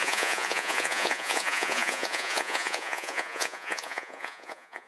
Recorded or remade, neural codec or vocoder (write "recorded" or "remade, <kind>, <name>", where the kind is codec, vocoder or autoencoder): remade, vocoder, Vocos